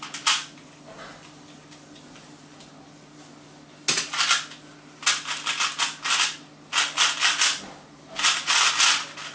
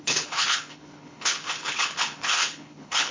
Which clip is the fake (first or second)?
second